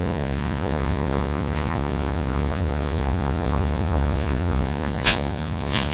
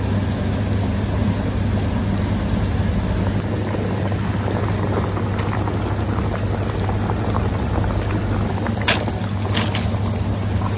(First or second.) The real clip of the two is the second